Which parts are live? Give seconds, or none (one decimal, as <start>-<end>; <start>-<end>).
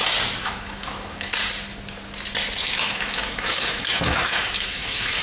0.0-0.4; 1.3-2.6